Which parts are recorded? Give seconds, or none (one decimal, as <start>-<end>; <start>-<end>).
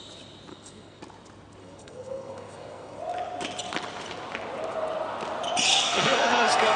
0.0-0.5; 1.0-1.6; 3.0-5.7